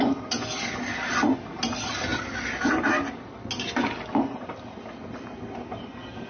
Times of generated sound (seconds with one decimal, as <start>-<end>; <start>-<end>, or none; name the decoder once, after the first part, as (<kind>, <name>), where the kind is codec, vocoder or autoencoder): none

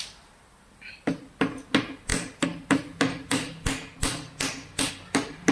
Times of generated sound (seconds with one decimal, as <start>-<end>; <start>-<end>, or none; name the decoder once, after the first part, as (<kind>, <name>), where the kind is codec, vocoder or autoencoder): none

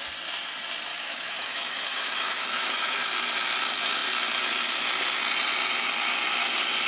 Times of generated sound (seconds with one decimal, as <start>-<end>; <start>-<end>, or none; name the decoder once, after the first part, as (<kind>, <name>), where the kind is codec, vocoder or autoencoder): 0.9-3.1 (autoencoder, DAC-VAE)